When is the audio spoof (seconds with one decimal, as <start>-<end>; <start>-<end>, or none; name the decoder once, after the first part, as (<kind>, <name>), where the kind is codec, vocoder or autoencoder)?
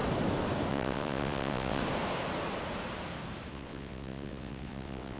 0.7-1.8 (vocoder, WaveNeXt); 3.5-5.2